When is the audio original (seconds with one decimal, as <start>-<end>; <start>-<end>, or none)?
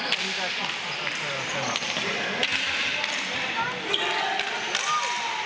0.0-5.5